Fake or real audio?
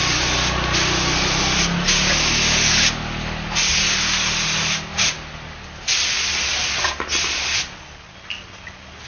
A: real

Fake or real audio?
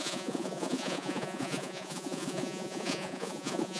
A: fake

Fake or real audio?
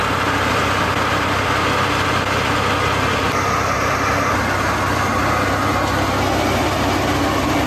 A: real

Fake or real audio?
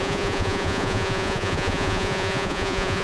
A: fake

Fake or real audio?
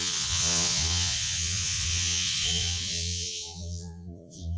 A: fake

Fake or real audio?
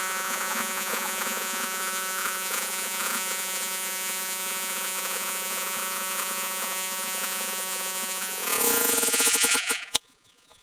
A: fake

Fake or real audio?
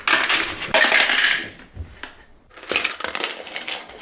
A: real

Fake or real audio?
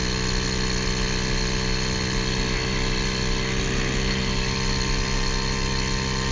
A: real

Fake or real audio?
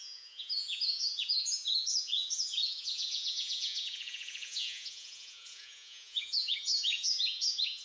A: fake